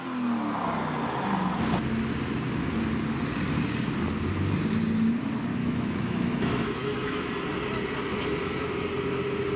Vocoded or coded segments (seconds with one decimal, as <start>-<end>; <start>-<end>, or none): 5.6-7.3

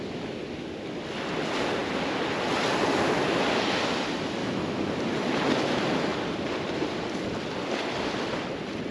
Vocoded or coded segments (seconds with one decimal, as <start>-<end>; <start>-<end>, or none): 4.4-4.9

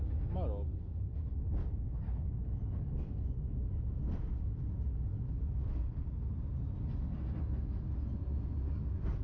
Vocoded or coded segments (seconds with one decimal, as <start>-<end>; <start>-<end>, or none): none

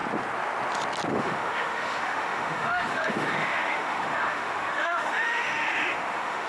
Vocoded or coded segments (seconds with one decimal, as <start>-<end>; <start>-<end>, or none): 1.1-6.5

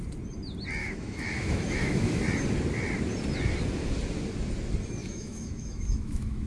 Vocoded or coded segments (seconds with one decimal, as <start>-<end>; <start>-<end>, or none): 0.8-2.2; 5.0-6.5

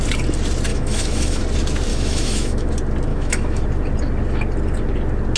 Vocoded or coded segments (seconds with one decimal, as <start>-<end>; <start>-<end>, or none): 0.7-1.4; 1.9-2.7; 3.1-3.6